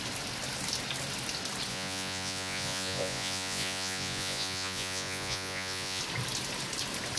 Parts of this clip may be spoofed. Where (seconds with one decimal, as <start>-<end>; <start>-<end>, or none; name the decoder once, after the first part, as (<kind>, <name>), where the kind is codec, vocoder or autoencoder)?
1.7-6.0 (vocoder, Vocos)